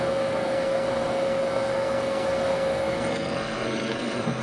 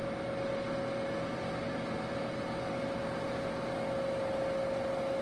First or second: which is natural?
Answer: second